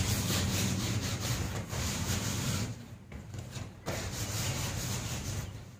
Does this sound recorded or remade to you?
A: remade